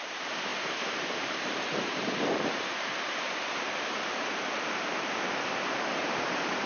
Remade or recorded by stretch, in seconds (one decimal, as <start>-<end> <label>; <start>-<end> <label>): 0.0-6.7 remade